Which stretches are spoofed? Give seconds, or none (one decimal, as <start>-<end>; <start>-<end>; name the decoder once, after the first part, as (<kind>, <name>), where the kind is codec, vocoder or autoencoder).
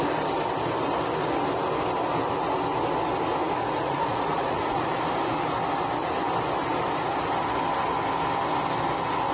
3.4-4.9 (vocoder, Vocos)